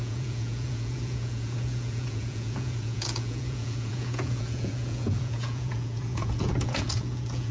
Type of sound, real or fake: fake